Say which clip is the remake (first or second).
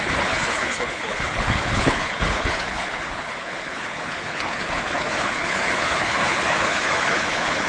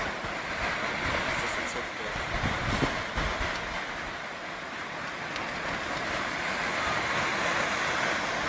first